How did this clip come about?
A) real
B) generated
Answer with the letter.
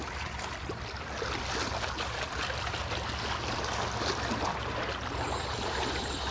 A